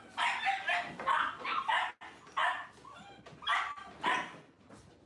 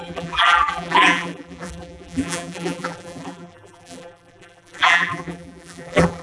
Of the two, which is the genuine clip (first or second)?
first